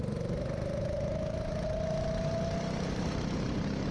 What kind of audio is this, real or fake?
real